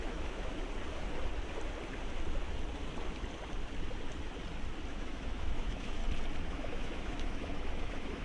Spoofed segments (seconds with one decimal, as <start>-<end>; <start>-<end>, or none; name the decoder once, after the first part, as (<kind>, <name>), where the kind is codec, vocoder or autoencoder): 0.0-0.5 (autoencoder, DAC-VAE); 4.9-6.0; 6.5-8.2